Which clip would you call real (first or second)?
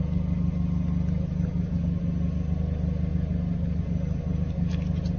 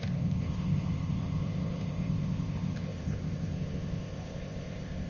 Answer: first